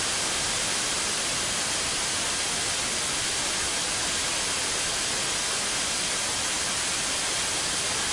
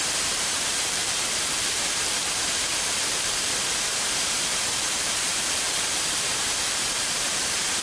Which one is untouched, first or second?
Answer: first